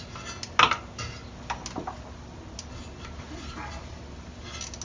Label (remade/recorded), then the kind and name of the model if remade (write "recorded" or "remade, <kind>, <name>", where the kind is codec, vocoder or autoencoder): recorded